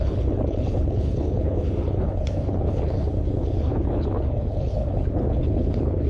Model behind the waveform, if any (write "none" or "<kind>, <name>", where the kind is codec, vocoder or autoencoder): codec, HILCodec